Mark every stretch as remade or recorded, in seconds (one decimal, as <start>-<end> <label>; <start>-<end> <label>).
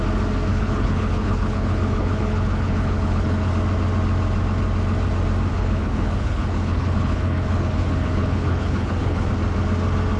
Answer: 0.0-0.5 recorded; 0.5-3.5 remade; 3.5-5.5 recorded; 5.5-9.3 remade; 9.3-10.2 recorded